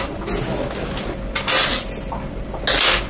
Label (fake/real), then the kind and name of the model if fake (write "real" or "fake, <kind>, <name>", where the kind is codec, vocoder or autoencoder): real